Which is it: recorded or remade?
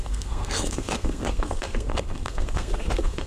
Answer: remade